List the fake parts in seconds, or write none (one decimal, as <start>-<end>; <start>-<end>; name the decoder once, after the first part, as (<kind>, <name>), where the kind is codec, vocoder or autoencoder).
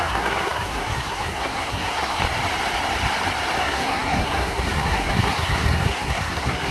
0.0-2.2 (codec, SNAC); 3.6-6.7